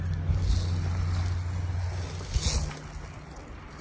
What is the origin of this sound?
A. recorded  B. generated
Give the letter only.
A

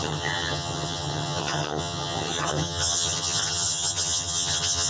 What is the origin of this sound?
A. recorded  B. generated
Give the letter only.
B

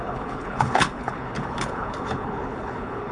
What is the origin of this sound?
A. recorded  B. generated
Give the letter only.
B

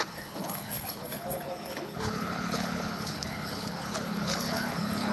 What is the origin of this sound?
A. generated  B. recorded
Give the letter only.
A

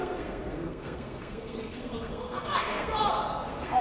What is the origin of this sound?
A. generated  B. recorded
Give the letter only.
A